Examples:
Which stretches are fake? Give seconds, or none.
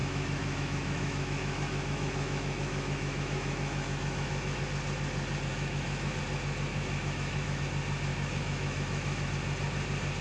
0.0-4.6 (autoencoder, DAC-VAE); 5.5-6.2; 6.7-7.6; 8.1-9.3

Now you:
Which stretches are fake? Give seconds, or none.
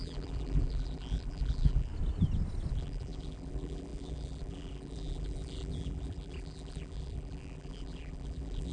0.0-1.9 (vocoder, BigVGAN v2); 2.7-8.7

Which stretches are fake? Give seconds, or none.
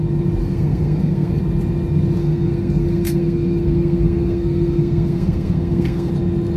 0.4-1.4 (codec, SNAC); 2.2-6.1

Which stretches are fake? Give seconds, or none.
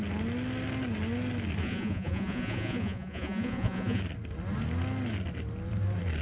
1.6-4.0 (vocoder, Vocos)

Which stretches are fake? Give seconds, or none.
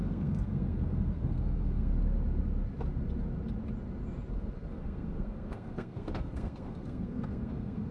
0.0-1.9 (codec, SNAC); 4.7-7.9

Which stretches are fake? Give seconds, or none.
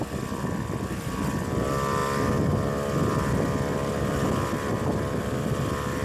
none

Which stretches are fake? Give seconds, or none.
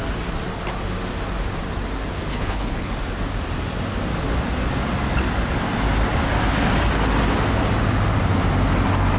2.3-2.9 (codec, HILCodec)